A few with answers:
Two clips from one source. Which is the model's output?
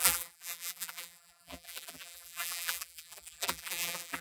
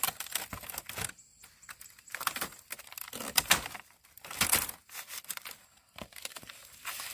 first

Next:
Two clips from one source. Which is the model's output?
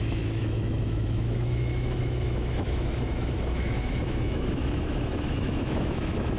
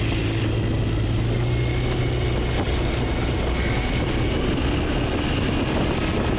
first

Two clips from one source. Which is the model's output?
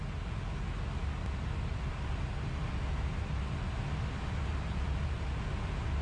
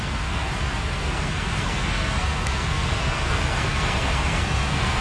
second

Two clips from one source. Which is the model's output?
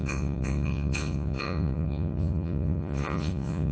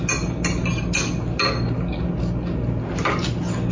first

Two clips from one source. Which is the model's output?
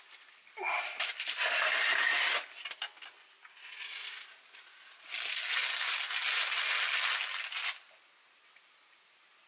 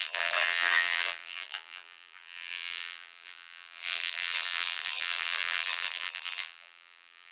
second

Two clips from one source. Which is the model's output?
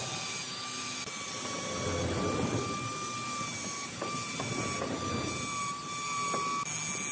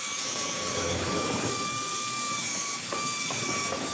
second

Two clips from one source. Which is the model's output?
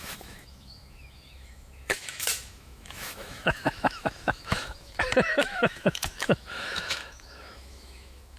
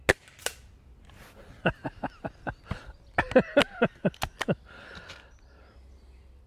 first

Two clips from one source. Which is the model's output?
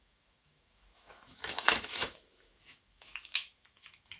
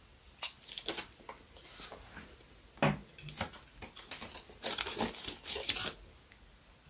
first